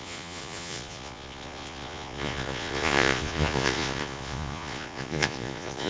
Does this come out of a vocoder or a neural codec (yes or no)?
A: yes